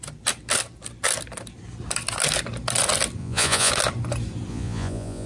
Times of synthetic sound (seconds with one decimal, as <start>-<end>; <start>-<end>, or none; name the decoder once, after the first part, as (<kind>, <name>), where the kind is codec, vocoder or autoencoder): 3.2-3.7 (vocoder, Vocos); 4.5-5.3